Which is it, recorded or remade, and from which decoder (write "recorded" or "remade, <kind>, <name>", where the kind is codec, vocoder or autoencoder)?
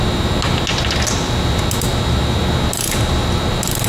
recorded